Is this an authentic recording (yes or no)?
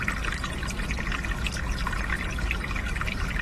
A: yes